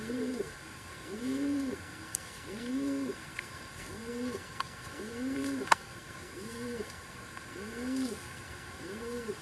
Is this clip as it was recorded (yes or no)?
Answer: no